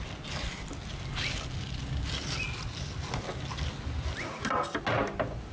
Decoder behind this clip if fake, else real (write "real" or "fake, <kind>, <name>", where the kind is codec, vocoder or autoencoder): real